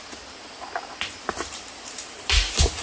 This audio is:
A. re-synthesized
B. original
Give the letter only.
B